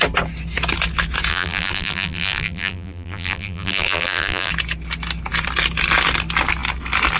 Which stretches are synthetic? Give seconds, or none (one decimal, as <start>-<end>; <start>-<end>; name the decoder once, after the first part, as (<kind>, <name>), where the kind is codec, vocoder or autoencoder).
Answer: 1.3-4.5 (vocoder, BigVGAN v2)